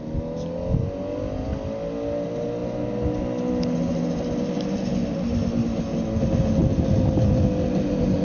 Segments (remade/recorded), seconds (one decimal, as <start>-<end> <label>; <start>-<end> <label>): 0.0-8.2 recorded